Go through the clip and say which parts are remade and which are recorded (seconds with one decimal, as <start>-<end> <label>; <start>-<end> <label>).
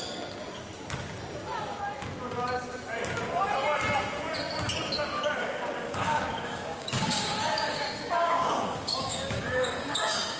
0.0-5.4 recorded; 5.4-10.4 remade